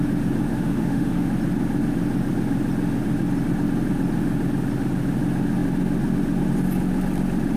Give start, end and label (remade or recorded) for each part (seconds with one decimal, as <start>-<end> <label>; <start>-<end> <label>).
0.0-0.5 recorded; 0.5-1.3 remade; 1.3-7.6 recorded